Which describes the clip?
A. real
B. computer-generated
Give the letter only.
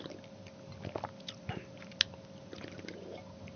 A